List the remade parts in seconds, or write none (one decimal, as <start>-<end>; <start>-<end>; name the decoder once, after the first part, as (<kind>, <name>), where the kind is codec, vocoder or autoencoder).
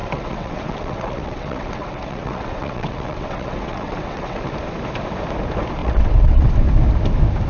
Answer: 0.0-4.5 (vocoder, WaveNeXt); 5.8-6.5